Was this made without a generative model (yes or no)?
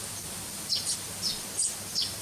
no